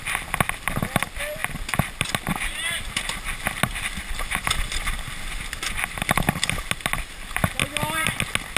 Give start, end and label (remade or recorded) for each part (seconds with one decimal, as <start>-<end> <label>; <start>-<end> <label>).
0.0-8.6 recorded